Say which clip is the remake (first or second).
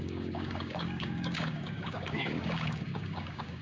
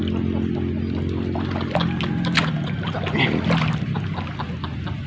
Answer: first